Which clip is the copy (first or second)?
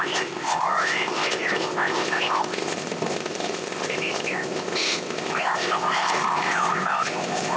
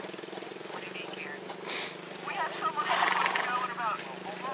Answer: first